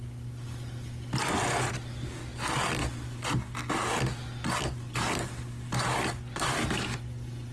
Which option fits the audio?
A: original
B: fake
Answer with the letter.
A